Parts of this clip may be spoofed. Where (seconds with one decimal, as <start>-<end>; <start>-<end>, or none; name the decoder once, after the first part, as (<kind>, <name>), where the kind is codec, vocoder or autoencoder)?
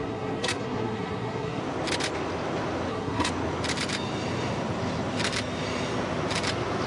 0.0-1.6 (codec, SNAC); 2.9-3.3